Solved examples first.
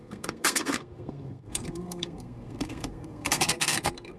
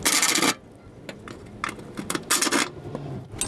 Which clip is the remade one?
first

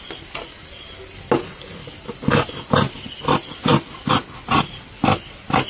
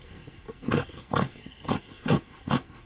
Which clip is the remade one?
second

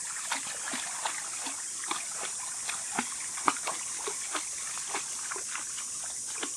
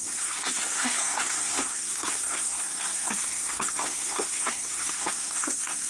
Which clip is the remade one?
second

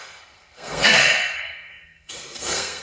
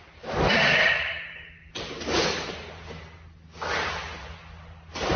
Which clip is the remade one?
first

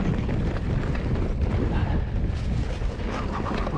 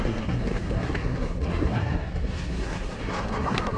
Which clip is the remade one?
second